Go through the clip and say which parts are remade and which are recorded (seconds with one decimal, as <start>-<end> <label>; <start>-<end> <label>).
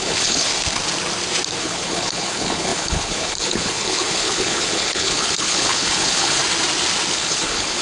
0.0-0.5 remade; 0.5-1.6 recorded; 1.6-6.4 remade; 6.4-7.1 recorded; 7.1-7.8 remade